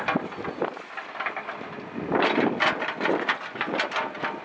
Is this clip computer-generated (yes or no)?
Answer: no